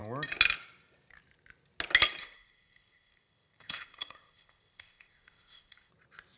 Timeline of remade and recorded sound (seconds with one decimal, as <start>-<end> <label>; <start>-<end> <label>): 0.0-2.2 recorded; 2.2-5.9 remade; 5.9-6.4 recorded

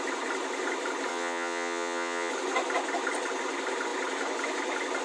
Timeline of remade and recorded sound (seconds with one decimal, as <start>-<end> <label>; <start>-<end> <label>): 0.0-1.1 recorded; 1.1-2.3 remade; 2.3-5.0 recorded

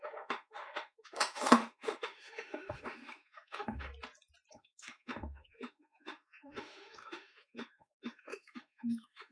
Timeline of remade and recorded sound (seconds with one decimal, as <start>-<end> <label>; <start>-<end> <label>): 0.0-3.9 remade; 3.9-4.5 recorded; 4.5-9.3 remade

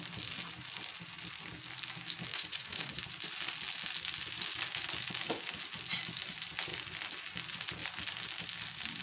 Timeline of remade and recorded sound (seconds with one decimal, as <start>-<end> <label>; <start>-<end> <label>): 0.0-2.3 recorded; 2.3-3.0 remade; 3.0-9.0 recorded

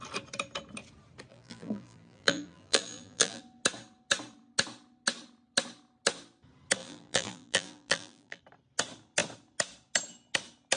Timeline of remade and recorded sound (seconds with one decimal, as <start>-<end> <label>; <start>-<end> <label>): 0.0-1.3 recorded; 1.3-3.4 remade; 3.4-6.8 recorded; 6.8-8.4 remade; 8.4-10.8 recorded

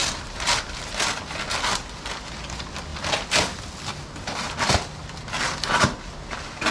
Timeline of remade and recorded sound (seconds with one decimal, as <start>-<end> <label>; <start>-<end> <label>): 0.0-1.4 remade; 1.4-2.9 recorded; 2.9-3.9 remade; 3.9-6.7 recorded